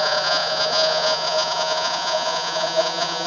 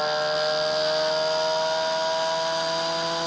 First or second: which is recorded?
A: second